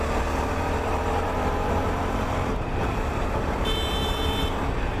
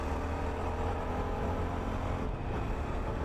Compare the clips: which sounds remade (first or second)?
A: first